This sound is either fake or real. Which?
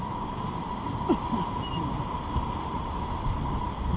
real